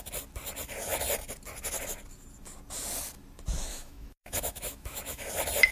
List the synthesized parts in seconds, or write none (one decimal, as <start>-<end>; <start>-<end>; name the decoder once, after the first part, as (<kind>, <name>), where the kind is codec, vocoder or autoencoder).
3.7-5.3 (autoencoder, DAC-VAE)